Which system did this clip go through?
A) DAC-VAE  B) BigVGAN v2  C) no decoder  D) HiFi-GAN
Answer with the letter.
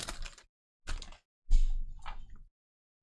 C